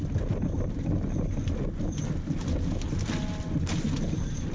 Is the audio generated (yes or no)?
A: no